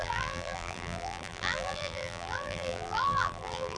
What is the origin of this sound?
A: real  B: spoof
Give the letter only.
B